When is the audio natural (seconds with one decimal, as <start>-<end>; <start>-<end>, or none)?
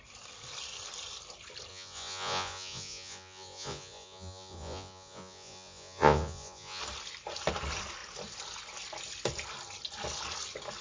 0.0-1.7; 6.8-10.8